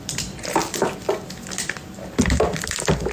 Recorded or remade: recorded